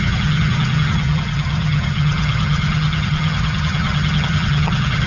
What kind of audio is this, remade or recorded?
remade